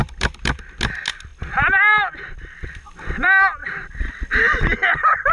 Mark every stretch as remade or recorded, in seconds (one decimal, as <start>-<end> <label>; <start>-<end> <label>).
0.0-0.6 remade; 0.6-3.6 recorded; 3.6-4.1 remade; 4.1-5.3 recorded